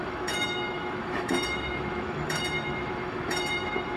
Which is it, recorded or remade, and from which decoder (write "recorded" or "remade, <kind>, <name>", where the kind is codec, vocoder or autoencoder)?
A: remade, autoencoder, DAC-VAE